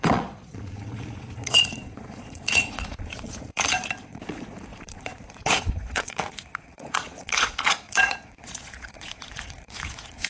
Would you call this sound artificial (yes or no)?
yes